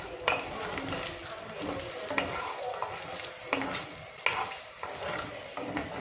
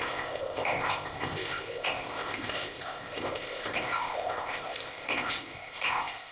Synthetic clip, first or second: second